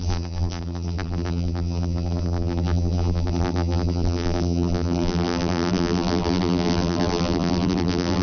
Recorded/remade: remade